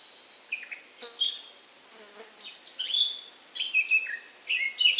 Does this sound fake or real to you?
real